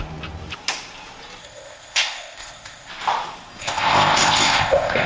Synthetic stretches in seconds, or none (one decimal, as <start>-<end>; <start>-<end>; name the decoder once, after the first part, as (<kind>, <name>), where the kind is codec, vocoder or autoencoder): 1.4-2.9 (codec, ZipCodec); 3.6-5.1

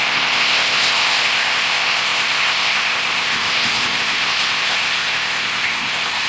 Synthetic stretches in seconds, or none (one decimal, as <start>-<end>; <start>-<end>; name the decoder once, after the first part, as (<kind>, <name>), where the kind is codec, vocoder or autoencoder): 0.0-6.3 (codec, ZipCodec)